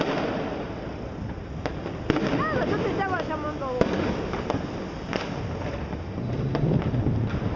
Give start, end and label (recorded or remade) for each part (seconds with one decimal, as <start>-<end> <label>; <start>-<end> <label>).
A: 0.0-7.6 recorded